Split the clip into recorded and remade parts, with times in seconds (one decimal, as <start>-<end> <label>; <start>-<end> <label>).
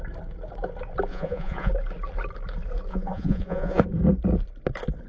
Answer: 0.0-1.1 recorded; 1.1-1.7 remade; 1.7-2.9 recorded; 2.9-3.9 remade; 3.9-5.1 recorded